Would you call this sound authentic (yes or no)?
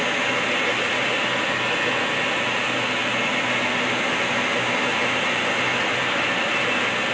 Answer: yes